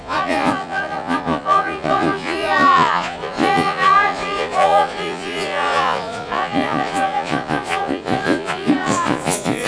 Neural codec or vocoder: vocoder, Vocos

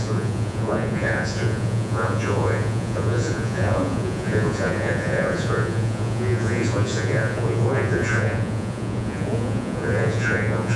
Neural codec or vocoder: vocoder, Vocos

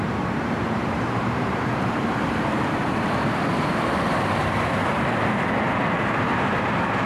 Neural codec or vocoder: vocoder, BigVGAN v2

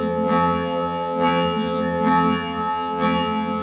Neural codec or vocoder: vocoder, HiFi-GAN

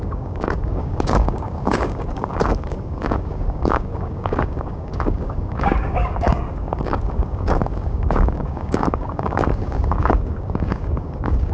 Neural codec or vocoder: codec, DAC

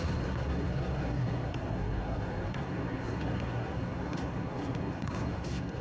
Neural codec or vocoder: codec, SNAC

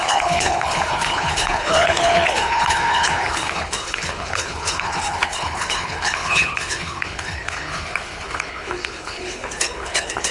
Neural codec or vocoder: codec, HILCodec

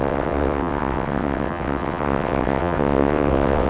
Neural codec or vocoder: vocoder, WaveNeXt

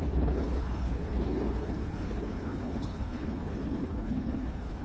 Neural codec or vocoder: codec, HILCodec